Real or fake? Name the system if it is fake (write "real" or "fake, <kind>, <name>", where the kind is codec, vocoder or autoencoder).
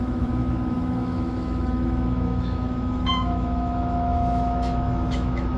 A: fake, autoencoder, DAC-VAE